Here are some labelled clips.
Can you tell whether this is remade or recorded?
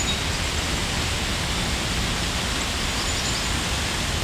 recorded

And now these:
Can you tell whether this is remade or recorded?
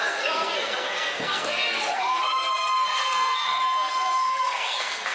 remade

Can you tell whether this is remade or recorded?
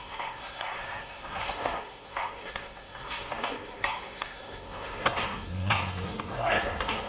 remade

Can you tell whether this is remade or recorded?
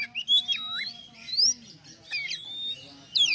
recorded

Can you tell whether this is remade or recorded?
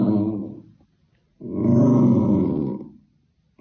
recorded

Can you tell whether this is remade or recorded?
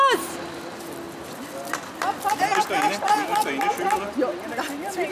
recorded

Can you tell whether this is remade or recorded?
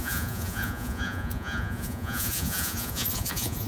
remade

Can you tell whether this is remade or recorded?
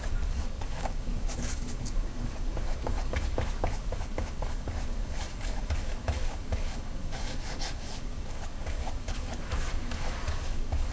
remade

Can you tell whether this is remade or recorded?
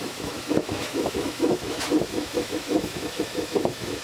remade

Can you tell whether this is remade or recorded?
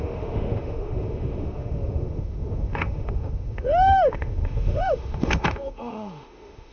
remade